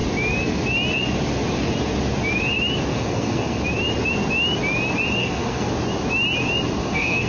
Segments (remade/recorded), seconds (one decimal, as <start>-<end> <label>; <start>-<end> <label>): 0.0-2.9 recorded; 2.9-3.6 remade; 3.6-5.2 recorded; 5.2-5.7 remade; 5.7-6.8 recorded; 6.8-7.3 remade